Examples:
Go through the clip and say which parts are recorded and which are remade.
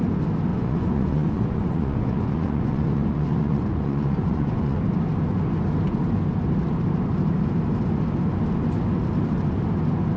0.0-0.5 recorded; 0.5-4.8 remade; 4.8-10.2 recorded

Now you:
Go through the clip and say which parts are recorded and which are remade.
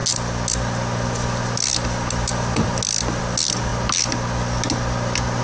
0.0-5.4 recorded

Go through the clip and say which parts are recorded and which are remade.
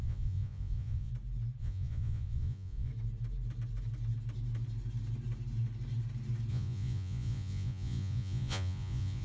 0.0-1.1 remade; 1.1-1.6 recorded; 1.6-2.9 remade; 2.9-6.5 recorded; 6.5-9.2 remade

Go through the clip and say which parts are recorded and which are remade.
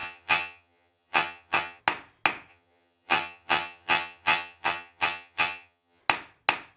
0.0-1.8 remade; 1.8-2.5 recorded; 2.5-6.0 remade; 6.0-6.8 recorded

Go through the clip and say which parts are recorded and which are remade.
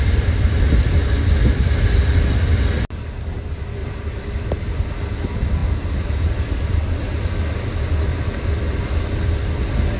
0.0-3.8 recorded; 3.8-4.9 remade; 4.9-8.1 recorded; 8.1-9.2 remade; 9.2-10.0 recorded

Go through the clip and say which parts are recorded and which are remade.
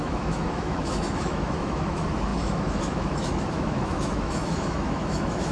0.0-5.5 remade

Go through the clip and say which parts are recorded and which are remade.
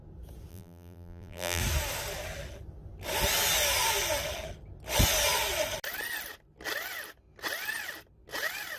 0.0-0.5 recorded; 0.5-1.6 remade; 1.6-8.8 recorded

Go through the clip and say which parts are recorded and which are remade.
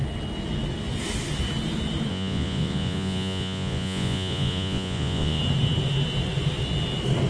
0.0-2.1 recorded; 2.1-5.4 remade; 5.4-7.3 recorded